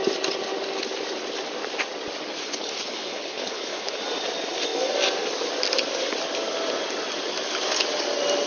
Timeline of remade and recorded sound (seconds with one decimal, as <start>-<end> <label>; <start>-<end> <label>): 0.0-2.4 recorded; 2.4-4.0 remade; 4.0-8.5 recorded